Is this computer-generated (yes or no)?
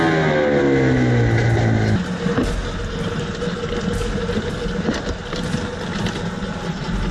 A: no